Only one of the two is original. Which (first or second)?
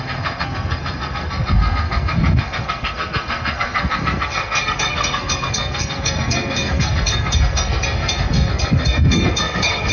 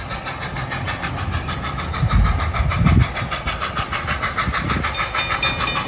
second